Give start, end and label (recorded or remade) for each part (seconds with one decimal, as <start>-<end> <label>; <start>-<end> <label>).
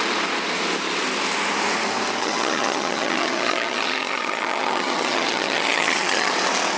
0.0-2.2 recorded; 2.2-6.3 remade; 6.3-6.8 recorded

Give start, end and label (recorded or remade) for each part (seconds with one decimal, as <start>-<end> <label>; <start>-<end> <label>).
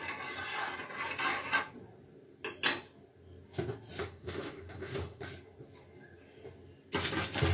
0.0-4.0 recorded; 4.0-5.2 remade; 5.2-7.5 recorded